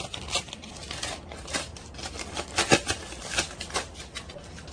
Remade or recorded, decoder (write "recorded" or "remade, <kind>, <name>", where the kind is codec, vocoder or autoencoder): recorded